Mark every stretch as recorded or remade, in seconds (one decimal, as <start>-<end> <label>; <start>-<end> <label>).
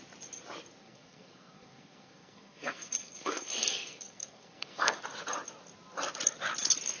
0.0-0.8 recorded; 0.8-5.0 remade; 5.0-7.0 recorded